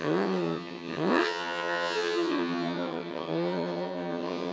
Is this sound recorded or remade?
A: remade